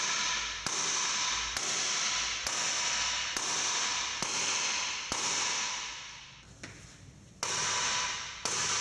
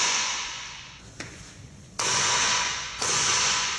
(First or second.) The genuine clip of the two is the first